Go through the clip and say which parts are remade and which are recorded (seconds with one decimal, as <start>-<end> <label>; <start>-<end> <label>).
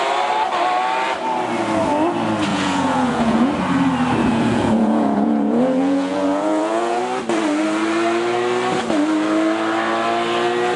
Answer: 0.0-2.5 recorded; 2.5-3.5 remade; 3.5-4.2 recorded; 4.2-7.0 remade; 7.0-10.8 recorded